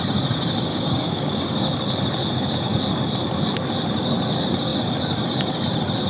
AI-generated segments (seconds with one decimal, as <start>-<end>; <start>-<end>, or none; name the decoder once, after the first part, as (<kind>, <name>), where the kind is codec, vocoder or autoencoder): 0.7-1.4 (codec, DAC)